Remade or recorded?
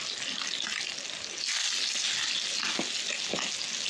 recorded